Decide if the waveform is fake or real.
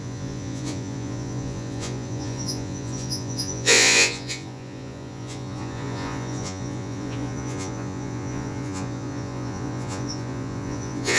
fake